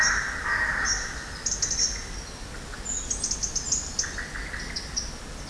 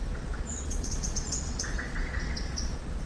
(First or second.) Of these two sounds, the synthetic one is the second